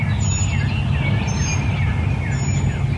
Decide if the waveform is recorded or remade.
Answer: recorded